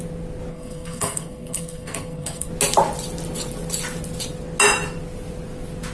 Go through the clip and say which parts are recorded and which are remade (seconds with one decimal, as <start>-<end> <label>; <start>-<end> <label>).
0.0-0.5 recorded; 0.5-2.5 remade; 2.5-5.9 recorded